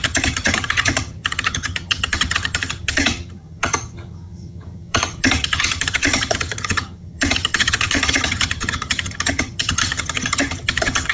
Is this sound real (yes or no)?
no